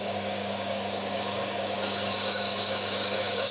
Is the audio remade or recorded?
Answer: remade